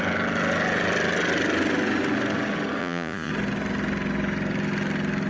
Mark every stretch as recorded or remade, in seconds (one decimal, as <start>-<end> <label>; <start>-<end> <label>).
0.0-2.8 recorded; 2.8-3.3 remade; 3.3-5.3 recorded